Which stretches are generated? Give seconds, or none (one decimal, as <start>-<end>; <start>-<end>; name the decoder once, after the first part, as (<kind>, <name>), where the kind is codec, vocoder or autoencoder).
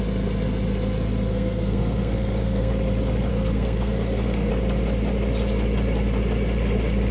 1.3-2.7 (codec, SNAC); 3.3-4.5